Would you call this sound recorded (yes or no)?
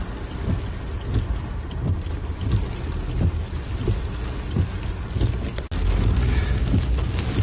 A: yes